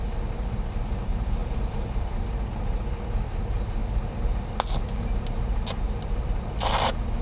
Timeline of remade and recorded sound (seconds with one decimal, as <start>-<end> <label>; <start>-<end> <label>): 0.0-1.4 recorded; 1.4-2.1 remade; 2.1-7.2 recorded